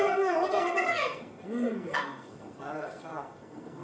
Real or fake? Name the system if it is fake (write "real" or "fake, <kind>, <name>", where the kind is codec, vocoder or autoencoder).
fake, codec, SNAC